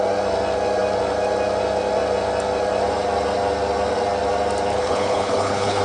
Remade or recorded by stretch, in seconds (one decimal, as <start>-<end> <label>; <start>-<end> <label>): 0.0-4.7 recorded; 4.7-5.8 remade

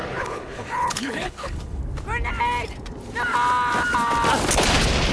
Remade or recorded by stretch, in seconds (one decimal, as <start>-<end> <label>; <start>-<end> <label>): 0.0-1.8 remade; 1.8-5.1 recorded

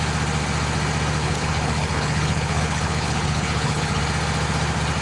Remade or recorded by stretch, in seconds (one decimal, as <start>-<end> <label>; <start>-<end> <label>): 0.0-1.2 recorded; 1.2-4.0 remade; 4.0-5.0 recorded

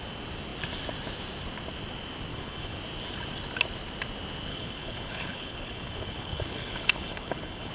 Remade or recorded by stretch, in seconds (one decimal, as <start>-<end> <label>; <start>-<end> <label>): 0.0-2.3 recorded; 2.3-2.8 remade; 2.8-4.5 recorded; 4.5-7.7 remade

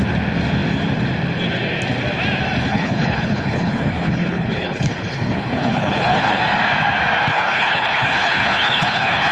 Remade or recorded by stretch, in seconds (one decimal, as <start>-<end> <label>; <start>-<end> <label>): 0.0-2.7 recorded; 2.7-6.4 remade; 6.4-7.3 recorded; 7.3-9.3 remade

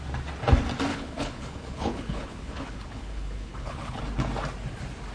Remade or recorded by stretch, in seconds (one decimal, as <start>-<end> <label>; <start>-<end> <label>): 0.0-0.9 recorded; 0.9-4.0 remade; 4.0-5.1 recorded